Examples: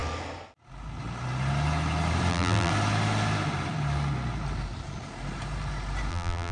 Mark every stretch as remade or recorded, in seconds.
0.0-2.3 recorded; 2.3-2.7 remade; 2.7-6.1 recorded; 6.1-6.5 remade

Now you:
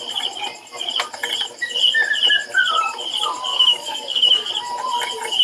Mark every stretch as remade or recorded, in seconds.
0.0-3.5 recorded; 3.5-4.5 remade; 4.5-5.4 recorded

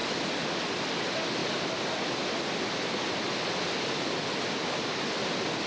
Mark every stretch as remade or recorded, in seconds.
0.0-5.7 recorded

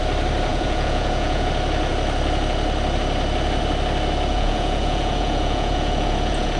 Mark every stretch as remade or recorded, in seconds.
0.0-0.5 recorded; 0.5-1.5 remade; 1.5-4.3 recorded; 4.3-6.6 remade

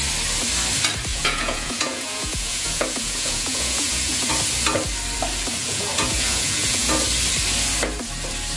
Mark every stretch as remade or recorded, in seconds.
0.0-1.1 recorded; 1.1-4.3 remade; 4.3-5.6 recorded; 5.6-6.9 remade; 6.9-8.6 recorded